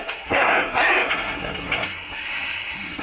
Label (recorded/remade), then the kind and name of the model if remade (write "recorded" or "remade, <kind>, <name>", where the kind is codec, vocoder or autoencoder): remade, codec, SNAC